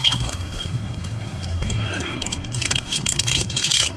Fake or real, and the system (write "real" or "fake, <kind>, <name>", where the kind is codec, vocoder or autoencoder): fake, codec, SNAC